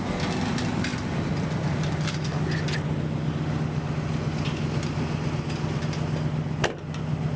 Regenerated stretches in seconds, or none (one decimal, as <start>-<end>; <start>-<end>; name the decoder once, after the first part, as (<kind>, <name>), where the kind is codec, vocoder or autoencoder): none